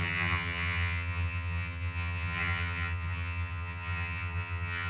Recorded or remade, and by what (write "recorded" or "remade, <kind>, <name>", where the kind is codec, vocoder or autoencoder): remade, vocoder, HiFi-GAN